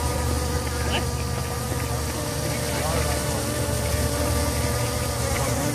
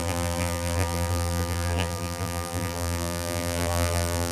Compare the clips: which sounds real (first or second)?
first